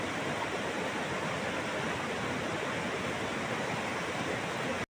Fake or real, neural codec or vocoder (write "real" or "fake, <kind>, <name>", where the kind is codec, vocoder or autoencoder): real